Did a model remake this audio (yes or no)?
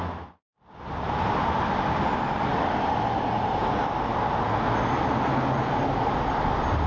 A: no